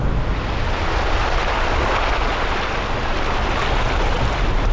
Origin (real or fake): real